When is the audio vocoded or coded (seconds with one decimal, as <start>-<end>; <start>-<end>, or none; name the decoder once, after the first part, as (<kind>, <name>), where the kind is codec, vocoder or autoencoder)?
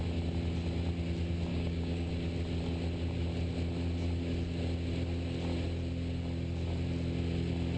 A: 1.5-2.1 (codec, DAC)